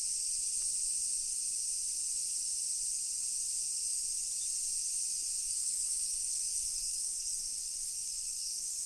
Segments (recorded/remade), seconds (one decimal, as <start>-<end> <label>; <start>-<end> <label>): 0.0-5.4 recorded; 5.4-8.9 remade